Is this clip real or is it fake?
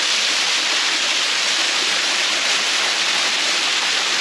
real